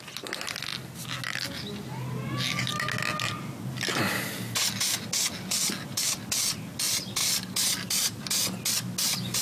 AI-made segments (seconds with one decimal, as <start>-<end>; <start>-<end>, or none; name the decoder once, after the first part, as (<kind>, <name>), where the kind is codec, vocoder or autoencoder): 7.2-8.7 (vocoder, BigVGAN v2)